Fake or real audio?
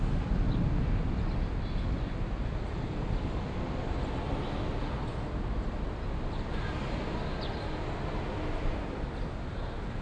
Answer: real